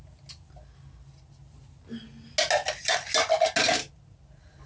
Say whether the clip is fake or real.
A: real